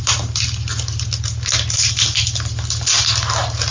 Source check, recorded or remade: recorded